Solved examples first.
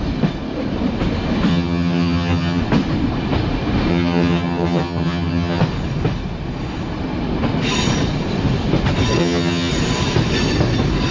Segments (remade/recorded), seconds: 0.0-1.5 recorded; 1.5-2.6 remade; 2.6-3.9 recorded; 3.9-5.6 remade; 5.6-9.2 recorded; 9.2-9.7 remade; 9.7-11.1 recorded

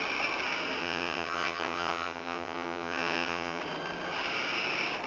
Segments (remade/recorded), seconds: 0.0-0.8 recorded; 0.8-3.6 remade; 3.6-5.1 recorded

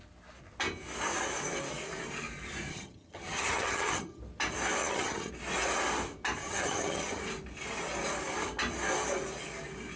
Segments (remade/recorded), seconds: 0.0-2.7 recorded; 2.7-4.2 remade; 4.2-4.8 recorded; 4.8-5.3 remade; 5.3-6.4 recorded; 6.4-7.2 remade; 7.2-10.0 recorded

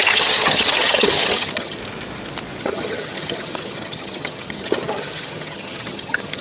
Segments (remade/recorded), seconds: 0.0-1.8 remade; 1.8-2.6 recorded; 2.6-6.4 remade

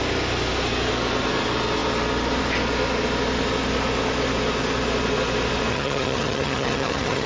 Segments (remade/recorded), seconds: 0.0-5.7 recorded; 5.7-7.3 remade

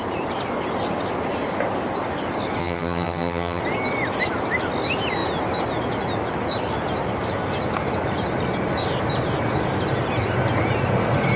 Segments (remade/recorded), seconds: 0.0-2.6 recorded; 2.6-3.6 remade; 3.6-11.4 recorded